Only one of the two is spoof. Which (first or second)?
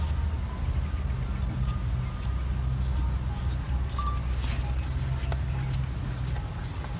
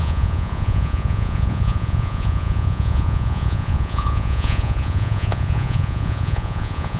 second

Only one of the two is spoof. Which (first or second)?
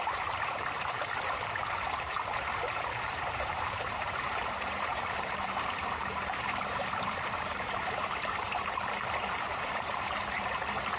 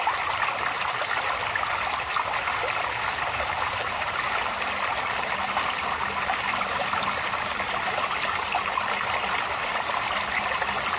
first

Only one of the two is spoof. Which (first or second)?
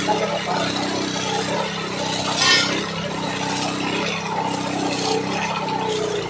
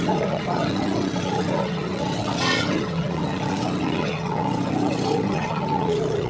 second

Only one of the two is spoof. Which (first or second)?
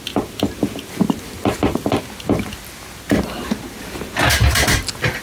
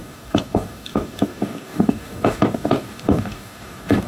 second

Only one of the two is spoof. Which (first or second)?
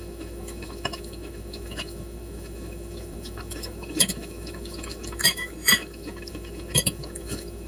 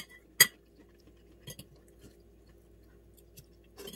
first